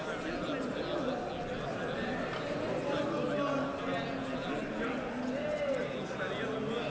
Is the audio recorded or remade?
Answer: recorded